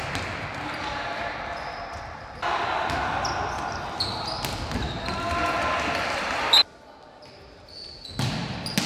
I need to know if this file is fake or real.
real